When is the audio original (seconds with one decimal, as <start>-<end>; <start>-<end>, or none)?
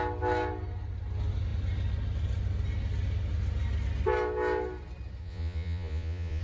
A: 0.0-5.2